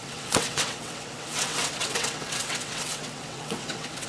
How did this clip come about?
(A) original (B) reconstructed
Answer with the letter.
B